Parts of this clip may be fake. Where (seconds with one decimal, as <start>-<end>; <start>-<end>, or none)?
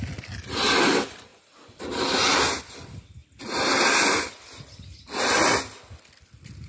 none